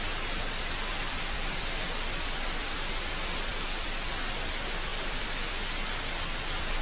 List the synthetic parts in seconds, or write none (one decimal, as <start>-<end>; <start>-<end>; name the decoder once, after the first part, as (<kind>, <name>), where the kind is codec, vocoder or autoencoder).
0.9-2.7 (vocoder, BigVGAN v2); 3.5-4.1; 4.9-5.5